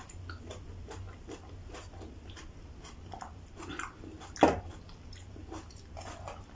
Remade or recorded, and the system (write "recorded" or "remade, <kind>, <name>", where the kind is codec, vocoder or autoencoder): recorded